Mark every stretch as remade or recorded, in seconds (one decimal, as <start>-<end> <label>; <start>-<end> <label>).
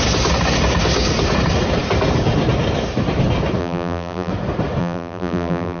0.0-3.6 recorded; 3.6-4.3 remade; 4.3-4.8 recorded; 4.8-5.8 remade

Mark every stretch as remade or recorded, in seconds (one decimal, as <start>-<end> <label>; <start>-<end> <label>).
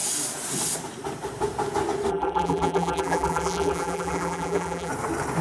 0.0-2.1 recorded; 2.1-4.9 remade; 4.9-5.4 recorded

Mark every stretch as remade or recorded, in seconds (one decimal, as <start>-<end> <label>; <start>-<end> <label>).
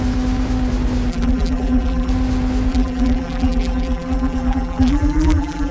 0.0-1.1 recorded; 1.1-2.1 remade; 2.1-2.7 recorded; 2.7-5.7 remade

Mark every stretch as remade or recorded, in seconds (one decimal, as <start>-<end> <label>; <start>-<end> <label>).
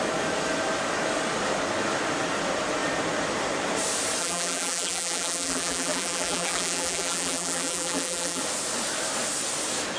0.0-4.2 recorded; 4.2-8.4 remade; 8.4-10.0 recorded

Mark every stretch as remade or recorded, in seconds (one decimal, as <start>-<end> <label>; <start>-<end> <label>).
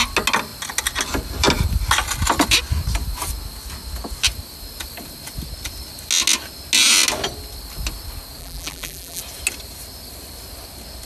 0.0-8.4 recorded; 8.4-9.2 remade; 9.2-11.1 recorded